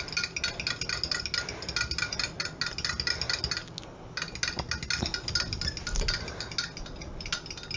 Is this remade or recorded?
recorded